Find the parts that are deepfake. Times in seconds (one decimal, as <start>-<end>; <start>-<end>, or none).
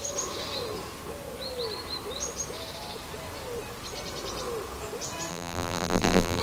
5.3-6.4